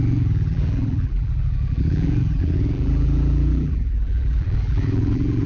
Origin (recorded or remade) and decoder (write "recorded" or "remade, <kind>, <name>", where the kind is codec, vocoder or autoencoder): remade, vocoder, BigVGAN v2